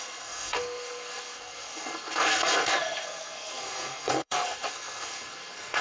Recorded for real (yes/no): no